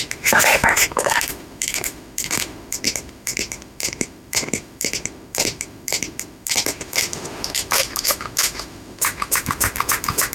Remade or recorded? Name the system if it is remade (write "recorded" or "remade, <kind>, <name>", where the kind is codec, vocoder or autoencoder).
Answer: remade, autoencoder, DAC-VAE